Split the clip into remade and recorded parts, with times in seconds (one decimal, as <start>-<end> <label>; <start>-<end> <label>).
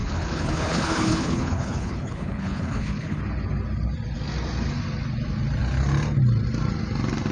0.0-3.2 remade; 3.2-7.3 recorded